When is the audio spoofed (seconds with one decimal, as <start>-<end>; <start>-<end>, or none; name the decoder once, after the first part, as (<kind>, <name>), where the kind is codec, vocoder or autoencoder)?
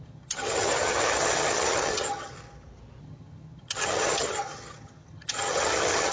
0.0-2.3 (vocoder, HiFi-GAN); 3.0-6.1